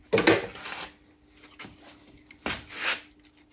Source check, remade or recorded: recorded